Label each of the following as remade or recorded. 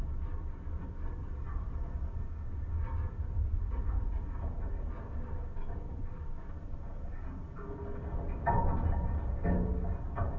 recorded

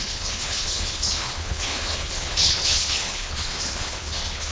remade